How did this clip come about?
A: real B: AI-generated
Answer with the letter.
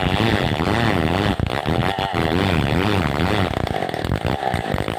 A